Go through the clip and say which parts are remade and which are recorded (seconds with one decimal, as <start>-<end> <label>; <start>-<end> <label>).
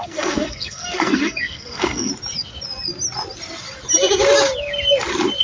0.0-2.1 remade; 2.1-5.4 recorded